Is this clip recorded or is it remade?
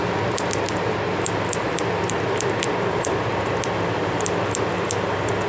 recorded